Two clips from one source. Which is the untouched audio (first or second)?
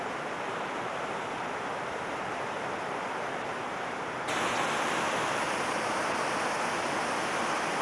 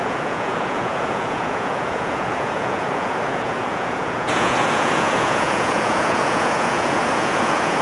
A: first